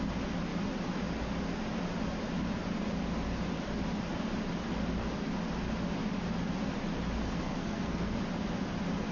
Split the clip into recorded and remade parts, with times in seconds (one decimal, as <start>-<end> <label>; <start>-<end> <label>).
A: 0.0-7.2 recorded; 7.2-8.2 remade; 8.2-9.1 recorded